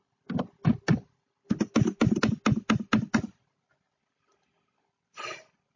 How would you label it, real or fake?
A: real